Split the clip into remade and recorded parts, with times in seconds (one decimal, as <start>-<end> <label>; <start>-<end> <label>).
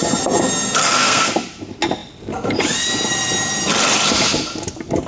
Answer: 0.0-0.8 recorded; 0.8-1.3 remade; 1.3-5.1 recorded